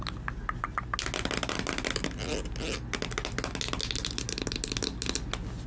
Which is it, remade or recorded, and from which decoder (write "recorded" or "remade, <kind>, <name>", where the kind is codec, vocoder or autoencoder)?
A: recorded